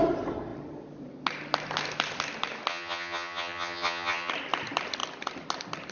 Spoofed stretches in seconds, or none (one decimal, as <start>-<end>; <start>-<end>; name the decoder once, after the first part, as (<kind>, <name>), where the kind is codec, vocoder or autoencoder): 2.7-4.3 (vocoder, HiFi-GAN)